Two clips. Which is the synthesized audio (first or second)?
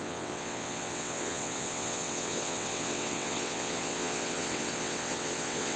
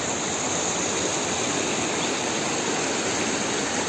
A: first